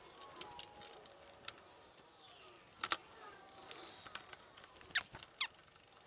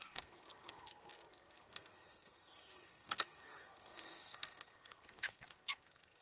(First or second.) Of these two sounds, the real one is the first